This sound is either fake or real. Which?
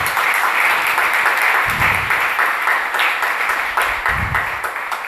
real